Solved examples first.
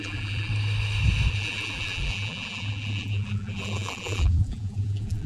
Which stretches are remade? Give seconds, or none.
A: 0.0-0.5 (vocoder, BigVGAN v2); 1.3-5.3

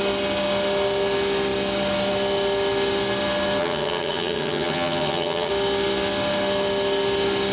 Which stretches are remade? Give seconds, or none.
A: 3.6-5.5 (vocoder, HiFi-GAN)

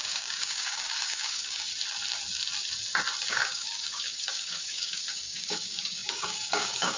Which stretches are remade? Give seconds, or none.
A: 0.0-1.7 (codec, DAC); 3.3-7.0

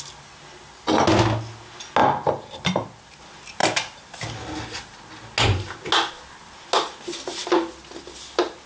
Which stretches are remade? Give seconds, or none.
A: none

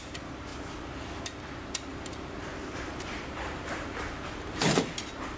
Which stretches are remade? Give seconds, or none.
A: 1.9-4.7 (vocoder, BigVGAN v2)